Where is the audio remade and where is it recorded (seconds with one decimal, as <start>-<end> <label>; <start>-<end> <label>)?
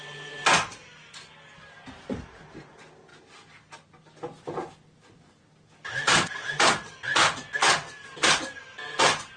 0.0-9.4 recorded